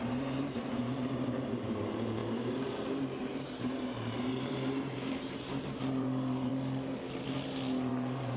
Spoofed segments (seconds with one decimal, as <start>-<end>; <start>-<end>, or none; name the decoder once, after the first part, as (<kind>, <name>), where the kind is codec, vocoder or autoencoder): 0.0-6.5 (vocoder, BigVGAN v2); 7.9-8.4

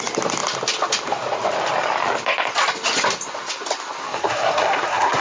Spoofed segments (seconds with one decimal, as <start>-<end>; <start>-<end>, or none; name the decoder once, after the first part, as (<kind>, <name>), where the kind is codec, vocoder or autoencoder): 4.0-5.2 (codec, SNAC)